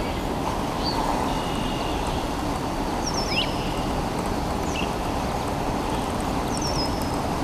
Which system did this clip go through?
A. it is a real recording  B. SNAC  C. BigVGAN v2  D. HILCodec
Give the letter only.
A